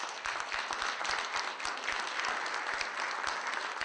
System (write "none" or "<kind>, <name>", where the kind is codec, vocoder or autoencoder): none